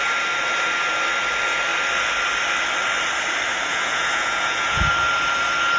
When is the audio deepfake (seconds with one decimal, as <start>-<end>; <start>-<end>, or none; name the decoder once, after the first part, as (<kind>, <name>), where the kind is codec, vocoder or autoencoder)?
3.7-4.9 (vocoder, Vocos)